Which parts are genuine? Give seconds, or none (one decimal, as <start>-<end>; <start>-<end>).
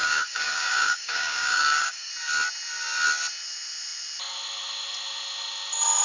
2.1-6.0